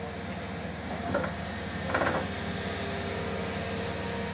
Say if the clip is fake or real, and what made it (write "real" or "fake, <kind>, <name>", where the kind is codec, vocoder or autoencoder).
real